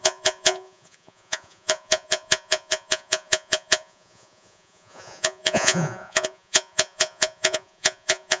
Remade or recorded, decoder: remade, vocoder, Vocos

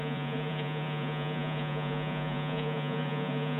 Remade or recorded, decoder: remade, vocoder, Vocos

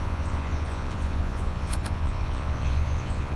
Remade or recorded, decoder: remade, vocoder, Vocos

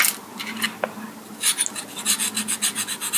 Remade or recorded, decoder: recorded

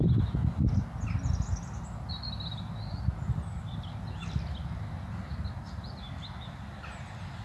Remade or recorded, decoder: recorded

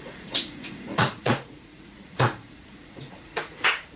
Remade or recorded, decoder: remade, vocoder, Vocos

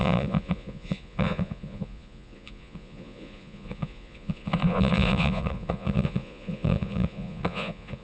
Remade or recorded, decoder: remade, vocoder, Vocos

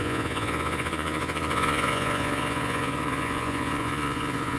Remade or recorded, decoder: remade, vocoder, Vocos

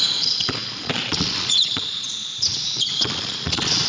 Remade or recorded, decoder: remade, vocoder, Vocos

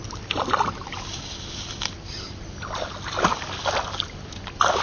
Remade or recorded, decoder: recorded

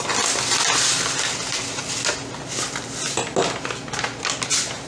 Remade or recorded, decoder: recorded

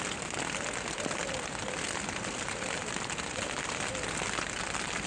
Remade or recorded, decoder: recorded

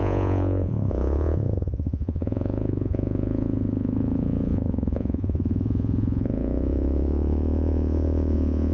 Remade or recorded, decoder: remade, vocoder, Vocos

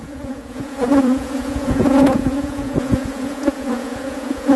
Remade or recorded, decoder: remade, vocoder, Vocos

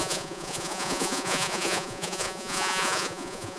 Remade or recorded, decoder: remade, vocoder, Vocos